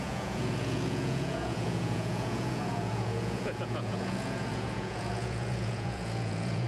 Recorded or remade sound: remade